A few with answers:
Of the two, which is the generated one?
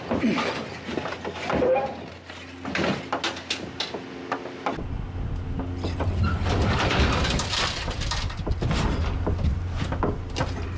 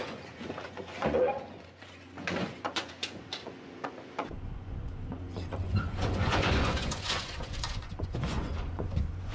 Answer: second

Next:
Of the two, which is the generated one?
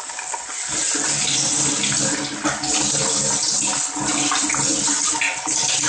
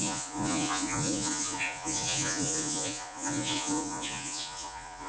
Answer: second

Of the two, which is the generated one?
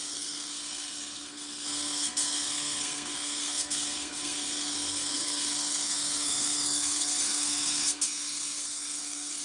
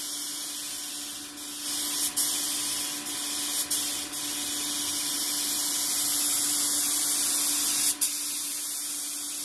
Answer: first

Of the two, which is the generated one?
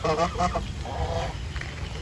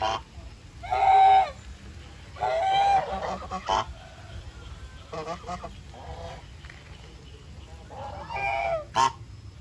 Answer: first